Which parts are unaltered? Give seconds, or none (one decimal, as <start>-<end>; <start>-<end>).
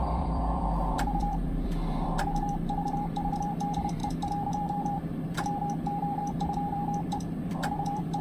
none